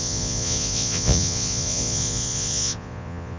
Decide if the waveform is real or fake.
fake